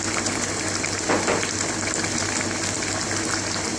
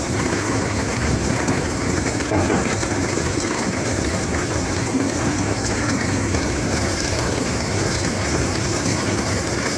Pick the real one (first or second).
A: first